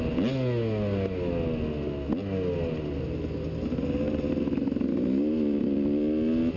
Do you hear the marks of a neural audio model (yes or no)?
no